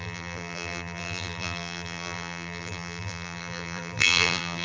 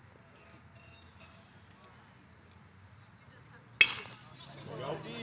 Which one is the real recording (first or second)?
second